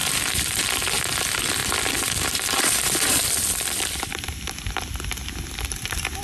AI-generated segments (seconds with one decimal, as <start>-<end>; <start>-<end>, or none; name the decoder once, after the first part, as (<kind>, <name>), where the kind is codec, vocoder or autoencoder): 0.0-0.6 (vocoder, BigVGAN v2); 1.6-5.3